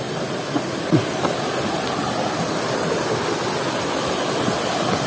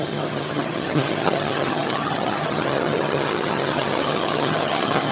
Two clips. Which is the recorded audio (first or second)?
first